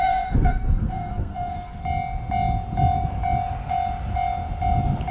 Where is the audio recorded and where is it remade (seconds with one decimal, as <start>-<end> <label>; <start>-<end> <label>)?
0.0-1.8 remade; 1.8-5.1 recorded